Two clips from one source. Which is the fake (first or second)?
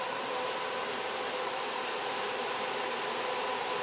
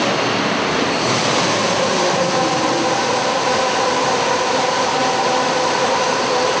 second